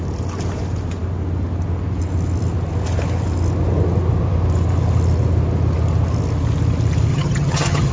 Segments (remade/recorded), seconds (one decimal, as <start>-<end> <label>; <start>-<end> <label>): 0.0-7.1 recorded; 7.1-7.9 remade